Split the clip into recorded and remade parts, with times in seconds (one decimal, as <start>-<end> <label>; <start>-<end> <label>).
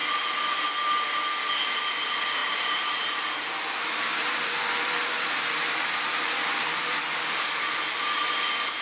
0.0-2.4 recorded; 2.4-7.0 remade; 7.0-8.8 recorded